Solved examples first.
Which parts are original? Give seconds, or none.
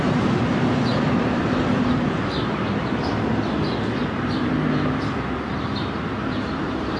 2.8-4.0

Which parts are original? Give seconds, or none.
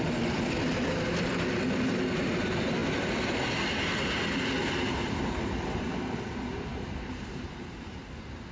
0.0-6.7; 8.1-8.5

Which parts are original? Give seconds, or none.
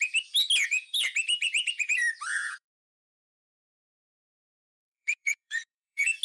0.0-0.6; 1.9-2.3; 2.8-3.6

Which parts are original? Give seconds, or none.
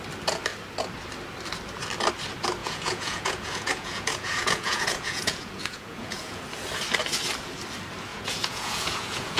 0.0-2.6; 6.4-8.1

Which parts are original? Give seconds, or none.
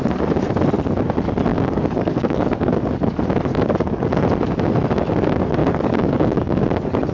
0.0-1.5; 3.1-3.5; 4.2-5.6; 6.6-7.1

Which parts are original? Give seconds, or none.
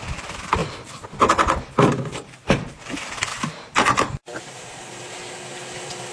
0.0-3.3; 5.0-6.1